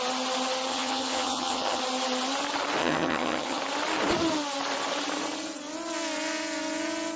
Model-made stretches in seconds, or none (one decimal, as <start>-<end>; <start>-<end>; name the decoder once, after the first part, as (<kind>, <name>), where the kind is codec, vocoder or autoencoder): 0.7-1.8 (vocoder, HiFi-GAN); 2.8-3.6

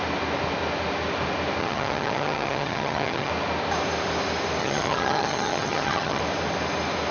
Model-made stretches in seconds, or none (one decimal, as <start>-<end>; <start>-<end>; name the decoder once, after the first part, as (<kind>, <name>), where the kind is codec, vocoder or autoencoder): 1.6-3.3 (vocoder, HiFi-GAN); 4.6-6.2

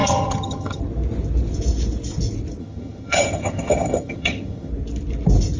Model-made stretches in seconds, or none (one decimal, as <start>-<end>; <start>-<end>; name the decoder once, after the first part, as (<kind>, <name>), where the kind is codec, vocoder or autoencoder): 0.0-0.8 (vocoder, HiFi-GAN); 2.6-4.7